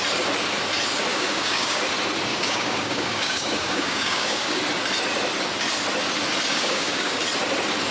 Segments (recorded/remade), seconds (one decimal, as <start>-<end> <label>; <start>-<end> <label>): 0.0-1.1 recorded; 1.1-1.8 remade; 1.8-2.3 recorded; 2.3-4.6 remade; 4.6-6.5 recorded; 6.5-7.2 remade; 7.2-7.9 recorded